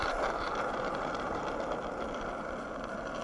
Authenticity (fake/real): fake